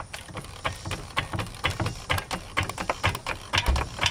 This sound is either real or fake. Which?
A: real